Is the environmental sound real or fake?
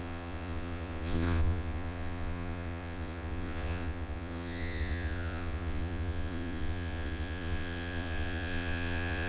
fake